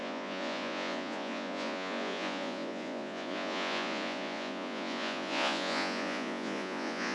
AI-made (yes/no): yes